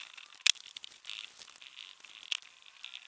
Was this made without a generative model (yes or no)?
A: yes